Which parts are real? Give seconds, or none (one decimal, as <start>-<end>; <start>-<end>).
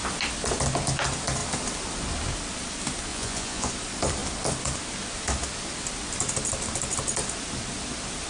0.0-3.1; 3.7-8.3